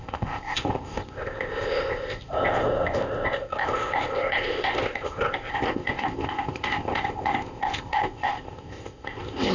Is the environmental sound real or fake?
fake